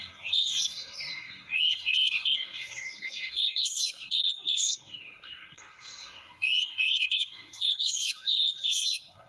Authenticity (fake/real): fake